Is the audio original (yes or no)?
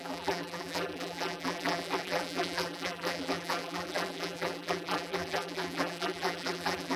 no